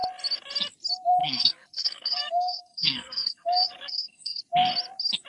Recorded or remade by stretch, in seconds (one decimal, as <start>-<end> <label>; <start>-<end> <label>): 0.0-1.2 recorded; 1.2-4.4 remade; 4.4-5.3 recorded